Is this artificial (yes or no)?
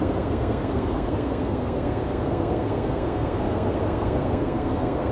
yes